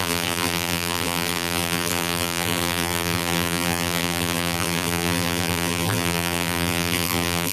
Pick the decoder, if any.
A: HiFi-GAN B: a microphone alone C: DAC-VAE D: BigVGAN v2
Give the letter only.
D